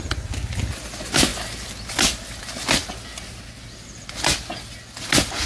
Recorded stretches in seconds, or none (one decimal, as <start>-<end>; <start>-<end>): 0.0-5.5